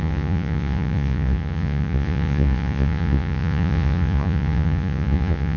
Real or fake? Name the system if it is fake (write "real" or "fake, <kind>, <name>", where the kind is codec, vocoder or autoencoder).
fake, vocoder, Vocos